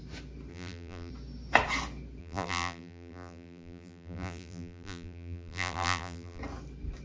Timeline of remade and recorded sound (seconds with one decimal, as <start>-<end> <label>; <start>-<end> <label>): 0.0-0.5 recorded; 0.5-1.1 remade; 1.1-2.2 recorded; 2.2-6.4 remade; 6.4-7.0 recorded